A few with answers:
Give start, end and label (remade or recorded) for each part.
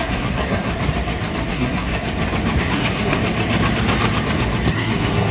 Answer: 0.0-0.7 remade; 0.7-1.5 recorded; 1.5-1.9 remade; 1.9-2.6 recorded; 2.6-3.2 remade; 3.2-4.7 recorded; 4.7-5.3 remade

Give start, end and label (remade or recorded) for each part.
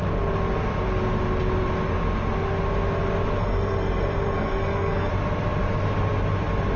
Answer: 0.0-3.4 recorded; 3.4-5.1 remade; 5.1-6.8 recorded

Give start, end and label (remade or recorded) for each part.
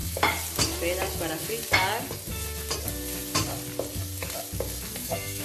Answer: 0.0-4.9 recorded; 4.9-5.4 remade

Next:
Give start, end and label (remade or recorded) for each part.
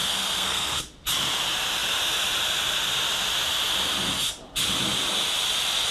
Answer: 0.0-0.8 remade; 0.8-5.9 recorded